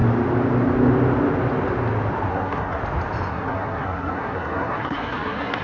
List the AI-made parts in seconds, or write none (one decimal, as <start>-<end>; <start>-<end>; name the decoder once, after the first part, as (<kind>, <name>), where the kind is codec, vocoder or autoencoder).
2.3-2.8 (codec, SNAC); 3.3-5.6